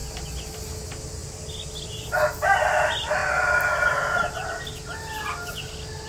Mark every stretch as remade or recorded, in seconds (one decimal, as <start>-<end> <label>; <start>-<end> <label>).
0.0-6.1 recorded